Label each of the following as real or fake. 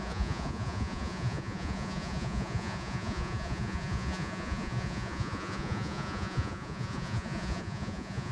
fake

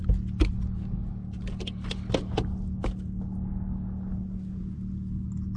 real